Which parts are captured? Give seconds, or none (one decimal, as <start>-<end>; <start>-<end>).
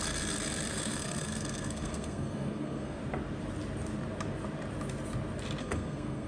0.0-0.7; 3.0-5.6